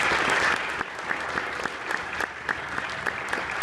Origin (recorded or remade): recorded